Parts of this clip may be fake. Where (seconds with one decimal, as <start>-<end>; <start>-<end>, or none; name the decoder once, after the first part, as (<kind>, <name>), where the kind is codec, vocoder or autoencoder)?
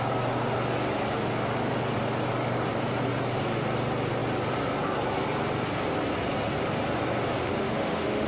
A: 7.4-8.3 (autoencoder, DAC-VAE)